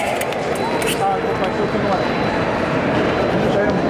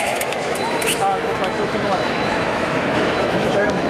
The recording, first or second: first